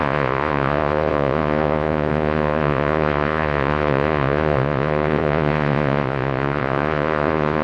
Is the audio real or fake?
fake